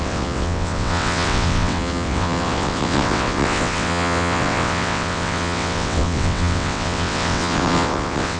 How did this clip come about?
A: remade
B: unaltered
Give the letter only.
A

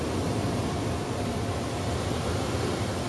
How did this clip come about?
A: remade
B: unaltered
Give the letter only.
B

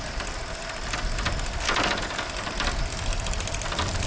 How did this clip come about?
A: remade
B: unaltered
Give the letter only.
B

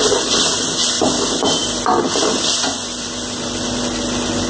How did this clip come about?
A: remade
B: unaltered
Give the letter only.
B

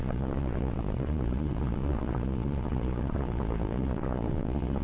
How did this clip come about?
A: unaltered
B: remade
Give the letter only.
B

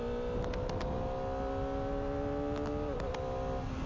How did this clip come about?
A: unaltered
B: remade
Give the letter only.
A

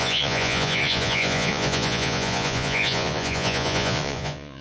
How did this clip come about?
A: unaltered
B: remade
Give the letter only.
B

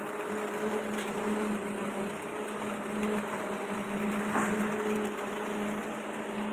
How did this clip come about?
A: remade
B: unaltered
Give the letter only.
B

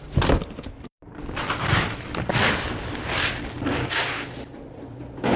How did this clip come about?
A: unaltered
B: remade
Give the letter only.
B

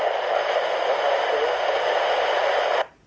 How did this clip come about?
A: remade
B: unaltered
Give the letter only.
B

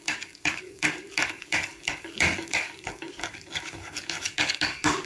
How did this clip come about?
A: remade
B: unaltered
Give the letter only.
A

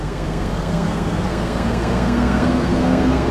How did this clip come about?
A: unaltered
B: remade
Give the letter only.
B